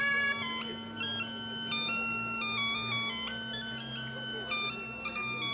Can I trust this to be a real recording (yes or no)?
yes